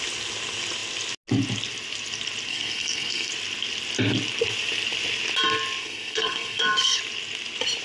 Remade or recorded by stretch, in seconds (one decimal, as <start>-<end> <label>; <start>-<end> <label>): 0.0-2.5 recorded; 2.5-3.3 remade; 3.3-5.8 recorded; 5.8-7.0 remade; 7.0-7.8 recorded